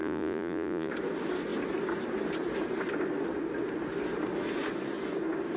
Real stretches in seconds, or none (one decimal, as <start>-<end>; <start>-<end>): 0.9-5.6